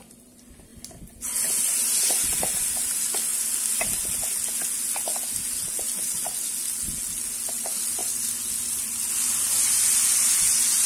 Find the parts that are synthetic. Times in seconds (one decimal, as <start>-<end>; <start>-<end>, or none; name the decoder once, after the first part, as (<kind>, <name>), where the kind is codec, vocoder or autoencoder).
none